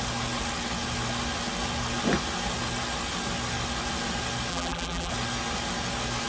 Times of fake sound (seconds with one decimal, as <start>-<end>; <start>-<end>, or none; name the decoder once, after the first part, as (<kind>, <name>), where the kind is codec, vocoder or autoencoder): 4.5-5.1 (vocoder, BigVGAN v2)

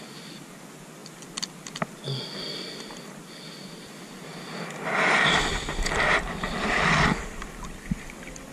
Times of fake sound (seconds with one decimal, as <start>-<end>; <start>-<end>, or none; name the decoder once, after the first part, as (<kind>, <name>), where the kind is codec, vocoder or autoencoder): none

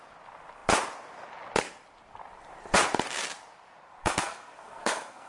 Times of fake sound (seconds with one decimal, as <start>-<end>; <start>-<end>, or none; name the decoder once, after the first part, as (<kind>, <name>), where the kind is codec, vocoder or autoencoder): 4.0-5.3 (codec, SNAC)

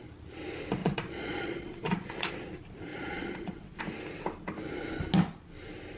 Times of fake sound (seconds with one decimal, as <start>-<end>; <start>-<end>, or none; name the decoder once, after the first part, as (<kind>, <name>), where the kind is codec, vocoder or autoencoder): 0.8-2.3 (vocoder, Vocos); 2.9-3.8

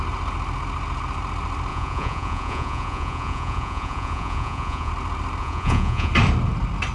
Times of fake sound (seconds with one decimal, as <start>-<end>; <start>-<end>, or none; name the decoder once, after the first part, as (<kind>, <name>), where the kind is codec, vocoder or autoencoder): 1.7-4.9 (vocoder, Vocos); 5.4-6.1

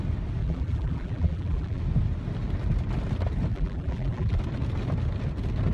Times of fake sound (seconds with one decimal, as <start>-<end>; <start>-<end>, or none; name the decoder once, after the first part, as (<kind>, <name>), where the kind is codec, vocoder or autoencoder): 0.4-1.8 (vocoder, BigVGAN v2); 3.5-4.4

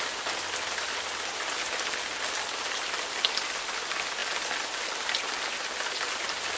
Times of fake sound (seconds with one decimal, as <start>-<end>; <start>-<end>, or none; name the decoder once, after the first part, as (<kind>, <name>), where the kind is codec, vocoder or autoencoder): none